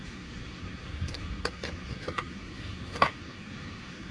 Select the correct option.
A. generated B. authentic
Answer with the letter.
A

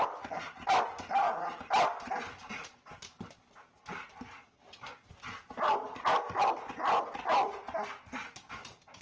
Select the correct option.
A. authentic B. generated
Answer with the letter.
A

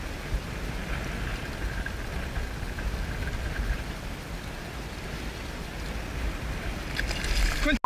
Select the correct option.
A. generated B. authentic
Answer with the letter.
B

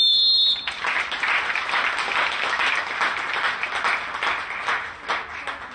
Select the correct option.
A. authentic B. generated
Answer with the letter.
A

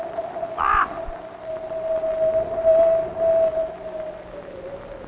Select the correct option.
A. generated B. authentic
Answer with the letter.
B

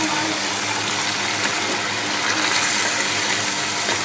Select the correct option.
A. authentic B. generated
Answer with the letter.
A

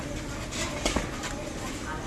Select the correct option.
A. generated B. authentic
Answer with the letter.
B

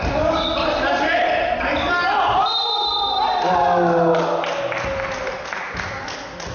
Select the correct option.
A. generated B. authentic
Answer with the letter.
B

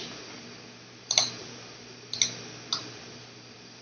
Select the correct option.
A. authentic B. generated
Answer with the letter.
A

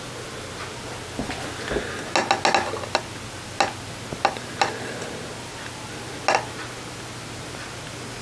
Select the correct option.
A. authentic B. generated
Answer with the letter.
A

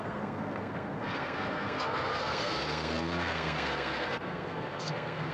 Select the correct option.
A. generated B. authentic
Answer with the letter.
A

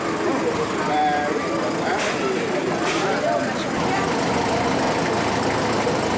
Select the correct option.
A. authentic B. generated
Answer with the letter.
A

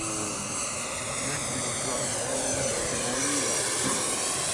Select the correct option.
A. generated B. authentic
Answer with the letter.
B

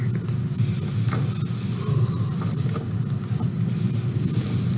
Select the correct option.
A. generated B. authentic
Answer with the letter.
B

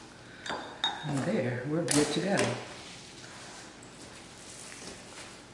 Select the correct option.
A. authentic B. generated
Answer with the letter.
A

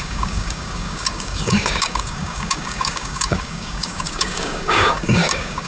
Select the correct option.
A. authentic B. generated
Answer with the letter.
B